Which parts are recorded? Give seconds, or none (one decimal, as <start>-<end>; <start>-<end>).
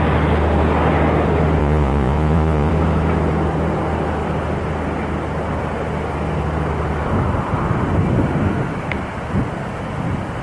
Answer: 0.0-1.6; 2.7-10.4